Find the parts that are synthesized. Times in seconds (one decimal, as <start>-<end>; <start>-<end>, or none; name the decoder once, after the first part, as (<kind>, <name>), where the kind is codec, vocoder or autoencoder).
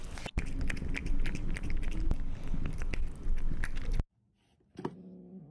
none